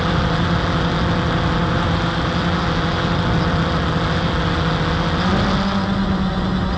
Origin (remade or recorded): recorded